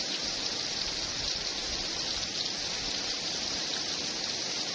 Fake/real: real